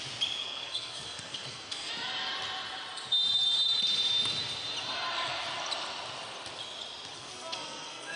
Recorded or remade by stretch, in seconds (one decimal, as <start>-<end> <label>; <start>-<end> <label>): 0.0-0.4 recorded; 0.4-1.9 remade; 1.9-7.1 recorded; 7.1-8.2 remade